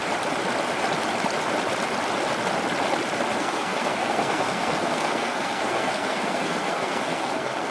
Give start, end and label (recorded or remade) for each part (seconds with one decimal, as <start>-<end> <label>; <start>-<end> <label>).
0.0-3.4 recorded; 3.4-7.7 remade